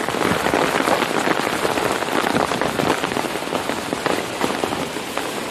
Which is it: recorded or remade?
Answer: recorded